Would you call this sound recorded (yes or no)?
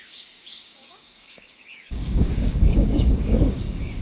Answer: no